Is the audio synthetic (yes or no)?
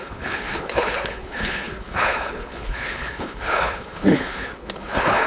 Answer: yes